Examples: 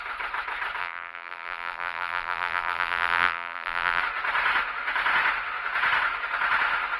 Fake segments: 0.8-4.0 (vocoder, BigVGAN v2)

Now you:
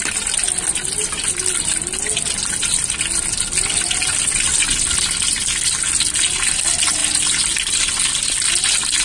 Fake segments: none

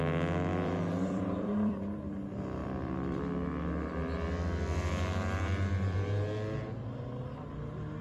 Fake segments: 0.5-1.7 (vocoder, BigVGAN v2); 2.6-3.2

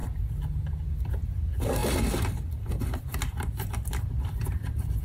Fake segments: 1.8-4.3 (vocoder, BigVGAN v2)